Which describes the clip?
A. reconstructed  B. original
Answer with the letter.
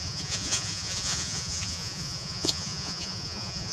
A